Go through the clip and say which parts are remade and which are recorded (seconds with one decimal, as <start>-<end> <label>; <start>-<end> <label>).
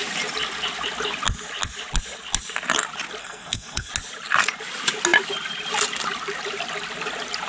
0.0-3.2 recorded; 3.2-3.9 remade; 3.9-7.5 recorded